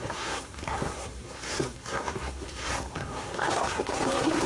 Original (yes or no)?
no